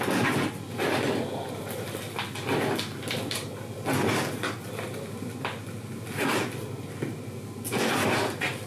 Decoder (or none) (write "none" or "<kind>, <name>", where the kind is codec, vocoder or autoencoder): none